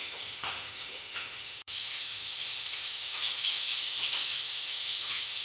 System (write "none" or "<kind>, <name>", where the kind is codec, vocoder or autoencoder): autoencoder, DAC-VAE